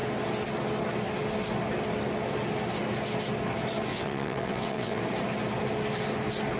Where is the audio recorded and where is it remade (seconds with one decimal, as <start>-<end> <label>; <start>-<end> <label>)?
0.0-3.9 recorded; 3.9-5.0 remade; 5.0-6.6 recorded